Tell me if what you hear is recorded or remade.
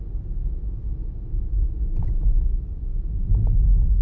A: recorded